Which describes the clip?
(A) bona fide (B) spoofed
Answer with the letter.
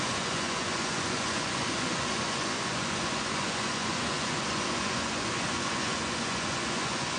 B